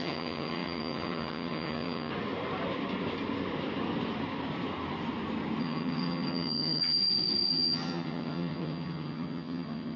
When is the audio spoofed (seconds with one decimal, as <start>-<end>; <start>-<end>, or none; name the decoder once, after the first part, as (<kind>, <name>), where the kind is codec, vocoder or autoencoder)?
0.0-2.1 (vocoder, HiFi-GAN); 5.6-7.0; 7.5-10.0